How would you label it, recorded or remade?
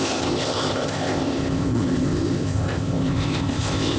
remade